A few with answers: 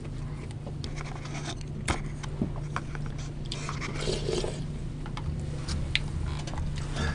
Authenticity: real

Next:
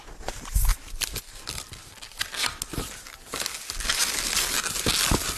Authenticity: real